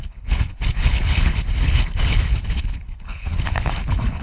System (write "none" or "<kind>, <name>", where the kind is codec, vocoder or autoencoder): codec, HILCodec